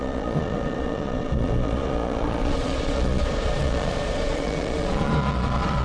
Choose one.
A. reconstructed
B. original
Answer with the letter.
A